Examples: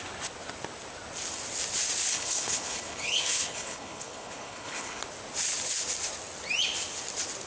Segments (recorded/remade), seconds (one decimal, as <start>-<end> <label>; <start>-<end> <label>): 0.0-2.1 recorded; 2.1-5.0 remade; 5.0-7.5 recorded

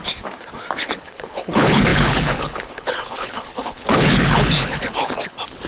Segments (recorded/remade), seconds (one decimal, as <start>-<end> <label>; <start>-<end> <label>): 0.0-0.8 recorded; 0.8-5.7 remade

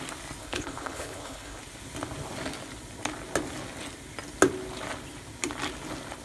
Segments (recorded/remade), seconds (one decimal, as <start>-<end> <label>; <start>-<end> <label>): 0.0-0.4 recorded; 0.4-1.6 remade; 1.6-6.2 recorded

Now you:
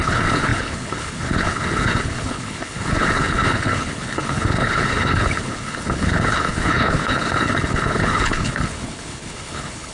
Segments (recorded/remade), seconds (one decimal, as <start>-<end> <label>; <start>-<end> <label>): 0.0-9.9 remade

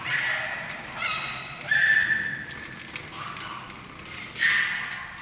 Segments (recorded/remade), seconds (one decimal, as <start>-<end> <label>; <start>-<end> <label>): 0.0-5.2 recorded

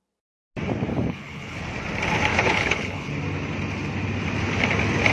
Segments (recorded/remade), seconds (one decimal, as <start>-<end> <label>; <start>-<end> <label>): 0.0-0.9 recorded; 0.9-1.6 remade; 1.6-2.3 recorded; 2.3-3.1 remade; 3.1-5.1 recorded